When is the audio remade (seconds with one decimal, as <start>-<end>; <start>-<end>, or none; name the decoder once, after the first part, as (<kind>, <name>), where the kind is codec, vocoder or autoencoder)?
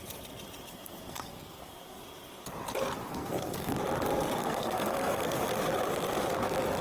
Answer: 0.7-2.0 (codec, SNAC); 3.1-3.7; 4.4-5.4